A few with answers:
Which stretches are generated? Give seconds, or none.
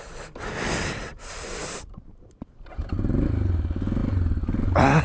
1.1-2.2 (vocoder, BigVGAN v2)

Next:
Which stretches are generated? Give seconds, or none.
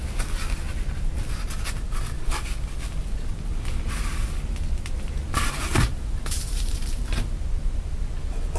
5.7-7.0 (vocoder, BigVGAN v2)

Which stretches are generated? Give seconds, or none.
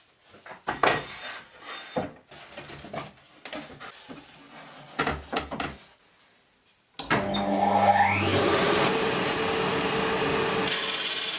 8.3-9.4 (vocoder, BigVGAN v2)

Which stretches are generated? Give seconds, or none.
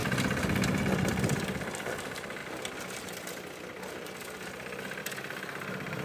none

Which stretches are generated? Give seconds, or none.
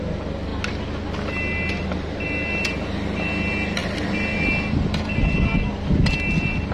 none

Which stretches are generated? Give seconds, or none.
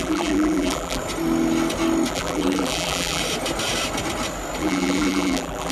0.0-1.0 (vocoder, BigVGAN v2); 2.1-3.2; 4.6-5.7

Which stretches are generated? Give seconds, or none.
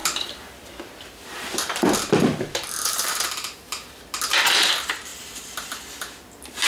0.0-4.0 (vocoder, BigVGAN v2); 5.1-5.8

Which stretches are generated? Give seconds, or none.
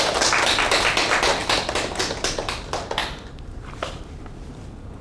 1.4-2.0 (vocoder, BigVGAN v2); 3.0-4.2